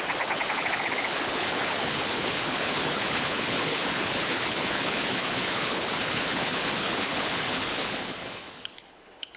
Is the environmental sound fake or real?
fake